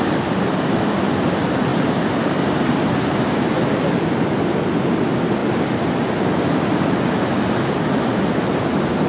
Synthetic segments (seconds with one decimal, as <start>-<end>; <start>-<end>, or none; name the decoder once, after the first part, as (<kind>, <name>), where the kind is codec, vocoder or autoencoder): 1.7-3.9 (vocoder, BigVGAN v2)